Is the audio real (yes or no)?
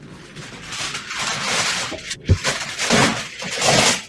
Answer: yes